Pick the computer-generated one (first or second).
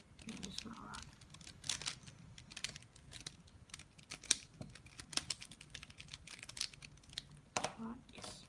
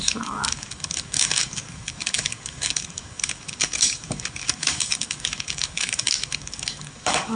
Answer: second